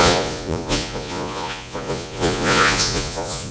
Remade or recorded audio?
remade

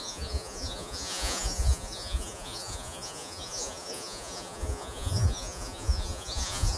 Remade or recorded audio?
remade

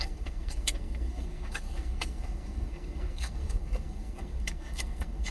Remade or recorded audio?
remade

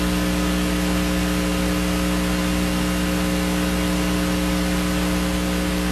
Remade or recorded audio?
recorded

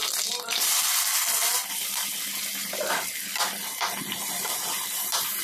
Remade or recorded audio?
recorded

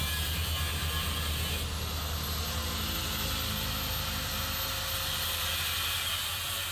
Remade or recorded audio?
recorded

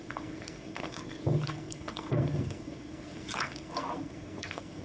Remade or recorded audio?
remade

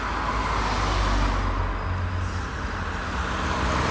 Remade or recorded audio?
recorded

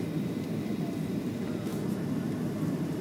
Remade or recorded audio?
recorded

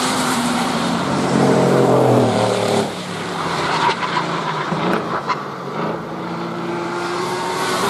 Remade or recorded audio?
remade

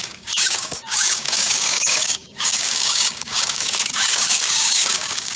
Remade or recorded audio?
remade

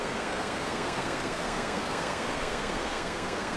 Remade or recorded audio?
remade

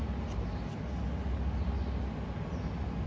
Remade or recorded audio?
recorded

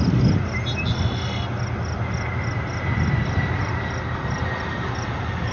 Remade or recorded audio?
recorded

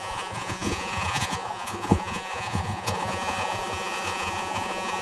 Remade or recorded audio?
remade